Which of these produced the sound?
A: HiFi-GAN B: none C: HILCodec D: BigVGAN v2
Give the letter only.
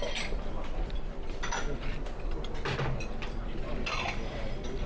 B